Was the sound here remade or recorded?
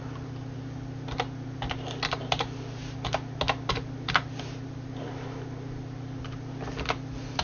recorded